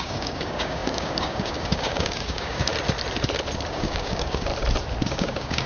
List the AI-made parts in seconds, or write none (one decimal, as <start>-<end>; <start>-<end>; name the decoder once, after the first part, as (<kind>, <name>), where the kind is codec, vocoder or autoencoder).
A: 0.0-2.7 (codec, DAC); 3.7-4.5; 5.1-5.7